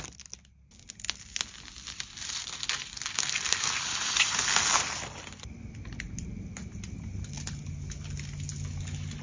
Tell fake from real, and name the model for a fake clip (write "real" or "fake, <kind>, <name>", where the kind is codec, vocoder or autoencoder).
real